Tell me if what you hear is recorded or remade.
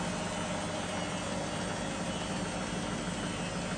recorded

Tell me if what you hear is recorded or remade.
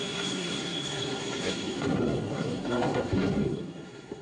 remade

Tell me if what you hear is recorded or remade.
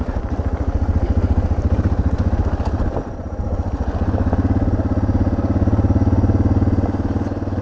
recorded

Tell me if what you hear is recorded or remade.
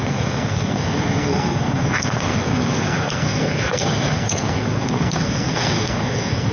remade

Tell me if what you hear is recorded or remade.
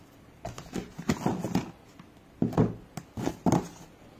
recorded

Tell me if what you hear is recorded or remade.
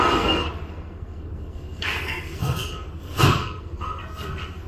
remade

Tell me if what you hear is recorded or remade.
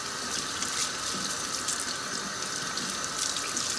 recorded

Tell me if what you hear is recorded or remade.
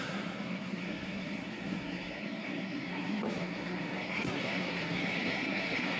remade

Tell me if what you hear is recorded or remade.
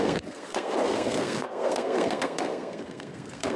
remade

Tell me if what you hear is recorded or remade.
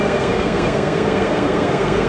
remade